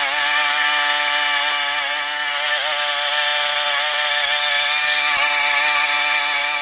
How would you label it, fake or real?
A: real